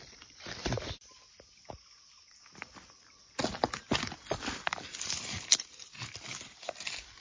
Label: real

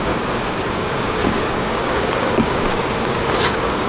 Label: fake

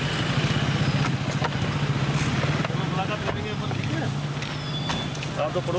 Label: real